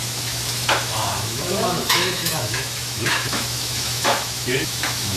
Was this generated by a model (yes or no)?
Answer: yes